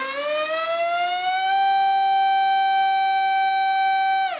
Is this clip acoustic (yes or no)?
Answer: yes